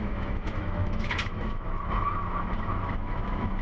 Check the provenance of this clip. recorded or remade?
remade